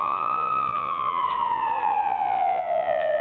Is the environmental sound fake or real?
fake